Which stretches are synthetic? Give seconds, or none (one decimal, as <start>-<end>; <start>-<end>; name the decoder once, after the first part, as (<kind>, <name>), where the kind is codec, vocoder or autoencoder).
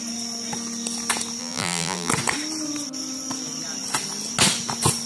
1.4-2.1 (vocoder, BigVGAN v2)